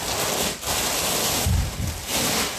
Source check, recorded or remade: recorded